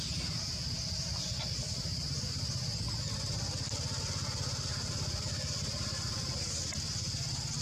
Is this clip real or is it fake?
real